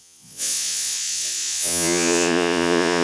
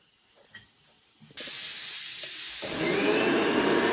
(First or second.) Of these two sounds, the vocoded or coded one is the first